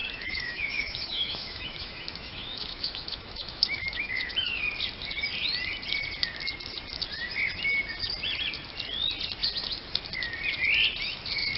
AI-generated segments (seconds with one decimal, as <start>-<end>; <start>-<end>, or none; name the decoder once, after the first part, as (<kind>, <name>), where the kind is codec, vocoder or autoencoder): 0.0-4.6 (autoencoder, DAC-VAE)